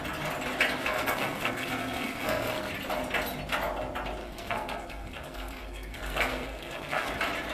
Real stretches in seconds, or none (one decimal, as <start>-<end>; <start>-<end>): 0.0-0.8; 2.7-4.2; 7.1-7.5